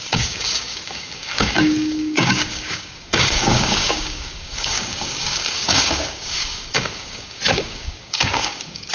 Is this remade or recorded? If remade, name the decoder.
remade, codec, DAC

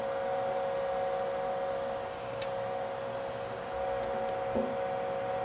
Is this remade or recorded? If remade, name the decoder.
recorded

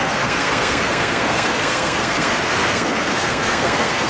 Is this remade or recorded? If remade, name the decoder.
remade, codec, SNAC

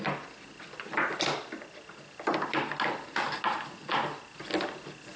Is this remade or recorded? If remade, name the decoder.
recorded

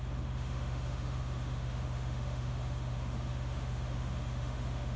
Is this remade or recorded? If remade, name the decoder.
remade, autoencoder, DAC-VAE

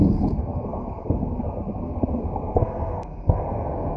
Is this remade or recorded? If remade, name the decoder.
remade, codec, SNAC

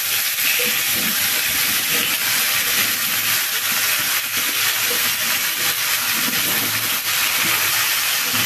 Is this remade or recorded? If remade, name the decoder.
recorded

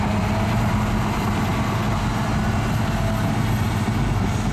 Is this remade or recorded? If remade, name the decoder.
recorded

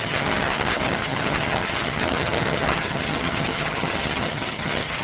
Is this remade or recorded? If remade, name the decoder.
remade, vocoder, HiFi-GAN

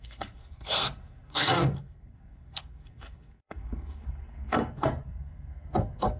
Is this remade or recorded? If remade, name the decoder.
remade, codec, SNAC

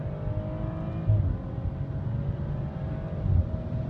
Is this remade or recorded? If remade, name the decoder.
recorded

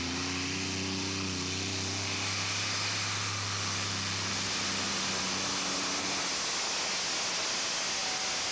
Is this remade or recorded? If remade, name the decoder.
recorded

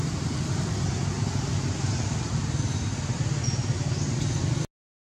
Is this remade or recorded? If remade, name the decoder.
recorded